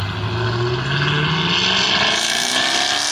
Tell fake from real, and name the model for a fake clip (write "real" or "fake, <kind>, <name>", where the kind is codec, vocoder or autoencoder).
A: real